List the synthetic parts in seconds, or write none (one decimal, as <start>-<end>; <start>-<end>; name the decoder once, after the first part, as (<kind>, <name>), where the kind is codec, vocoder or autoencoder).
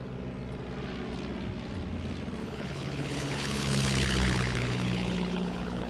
2.4-5.9 (codec, HILCodec)